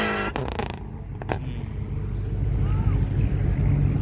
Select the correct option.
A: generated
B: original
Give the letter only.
B